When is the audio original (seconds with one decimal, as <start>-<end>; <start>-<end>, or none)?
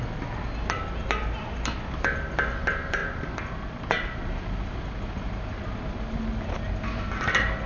0.0-7.7